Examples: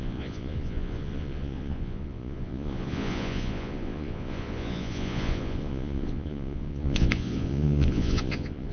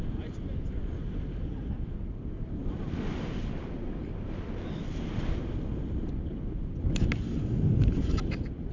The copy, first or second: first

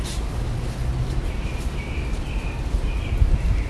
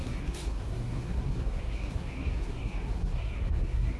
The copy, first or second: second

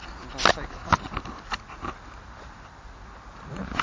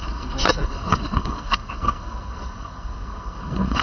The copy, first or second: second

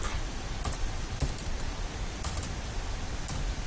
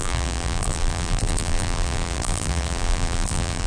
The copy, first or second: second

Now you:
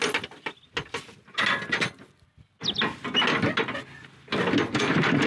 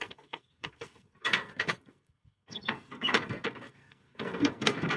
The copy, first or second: second